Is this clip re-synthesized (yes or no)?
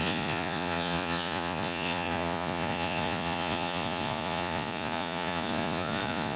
yes